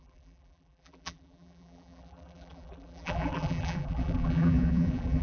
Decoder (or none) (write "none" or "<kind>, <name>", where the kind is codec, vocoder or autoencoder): vocoder, BigVGAN v2